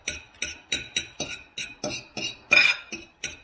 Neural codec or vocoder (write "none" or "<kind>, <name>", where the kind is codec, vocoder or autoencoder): none